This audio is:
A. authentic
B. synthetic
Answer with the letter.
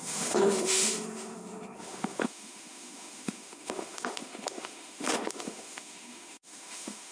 B